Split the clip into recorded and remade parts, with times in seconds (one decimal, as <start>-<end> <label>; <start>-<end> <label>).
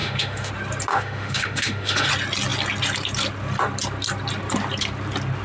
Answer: 0.0-0.5 remade; 0.5-0.9 recorded; 0.9-2.1 remade; 2.1-5.4 recorded